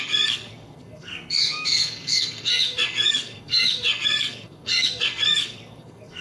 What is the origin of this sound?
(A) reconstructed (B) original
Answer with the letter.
A